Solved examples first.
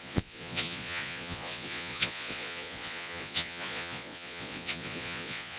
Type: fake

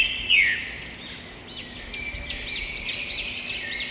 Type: real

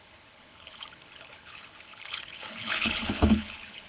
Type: fake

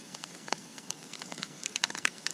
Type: fake